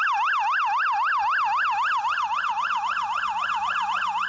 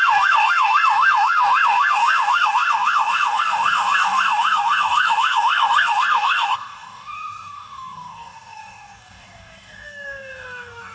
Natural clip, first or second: first